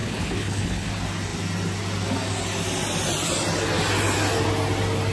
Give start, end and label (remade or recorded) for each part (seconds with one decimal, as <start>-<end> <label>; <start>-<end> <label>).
0.0-0.9 remade; 0.9-5.1 recorded